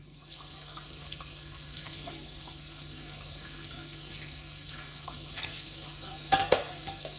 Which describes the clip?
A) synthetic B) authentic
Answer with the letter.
A